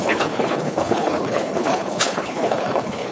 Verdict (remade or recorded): remade